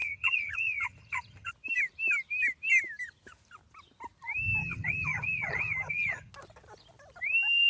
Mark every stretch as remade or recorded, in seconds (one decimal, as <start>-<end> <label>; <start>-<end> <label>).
0.0-1.5 remade; 1.5-4.6 recorded; 4.6-6.3 remade; 6.3-7.7 recorded